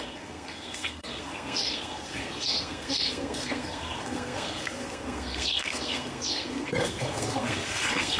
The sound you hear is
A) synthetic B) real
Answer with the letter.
A